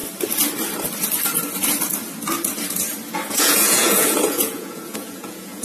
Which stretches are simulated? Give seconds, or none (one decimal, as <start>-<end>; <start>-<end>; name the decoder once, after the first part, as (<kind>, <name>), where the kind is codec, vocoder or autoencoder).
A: 3.4-5.6 (vocoder, Vocos)